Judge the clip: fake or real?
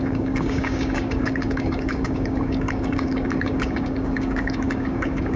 fake